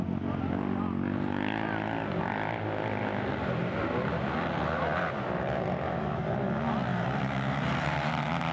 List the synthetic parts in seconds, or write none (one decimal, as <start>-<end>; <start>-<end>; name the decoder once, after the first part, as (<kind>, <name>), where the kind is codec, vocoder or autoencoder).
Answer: 6.9-8.1 (vocoder, BigVGAN v2)